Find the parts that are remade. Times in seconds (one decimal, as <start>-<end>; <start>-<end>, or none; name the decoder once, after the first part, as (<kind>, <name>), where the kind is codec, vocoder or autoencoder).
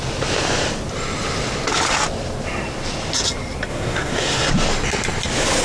3.7-4.5 (codec, SNAC)